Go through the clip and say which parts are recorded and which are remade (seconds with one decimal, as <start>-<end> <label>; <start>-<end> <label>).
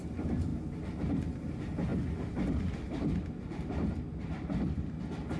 0.0-5.4 recorded